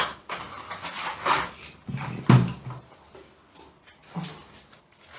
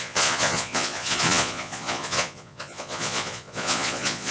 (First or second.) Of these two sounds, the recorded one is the first